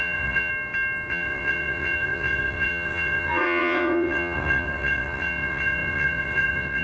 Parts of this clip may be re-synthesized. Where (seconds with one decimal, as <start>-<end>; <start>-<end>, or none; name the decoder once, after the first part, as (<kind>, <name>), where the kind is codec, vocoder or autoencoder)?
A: 0.0-0.5 (vocoder, WaveNeXt); 1.1-6.8